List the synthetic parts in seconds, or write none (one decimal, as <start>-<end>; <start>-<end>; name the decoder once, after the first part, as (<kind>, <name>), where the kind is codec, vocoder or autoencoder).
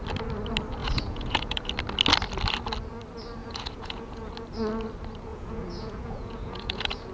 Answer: 0.8-1.7 (vocoder, Vocos); 3.4-4.3; 5.3-7.1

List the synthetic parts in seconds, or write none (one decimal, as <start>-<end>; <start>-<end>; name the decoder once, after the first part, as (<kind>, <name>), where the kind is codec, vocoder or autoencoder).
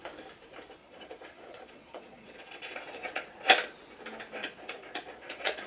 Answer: 0.8-3.3 (vocoder, Vocos); 4.4-5.7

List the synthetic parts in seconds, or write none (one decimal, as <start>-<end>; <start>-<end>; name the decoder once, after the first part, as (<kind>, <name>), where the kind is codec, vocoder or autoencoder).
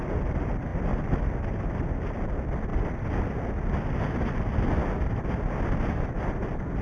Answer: none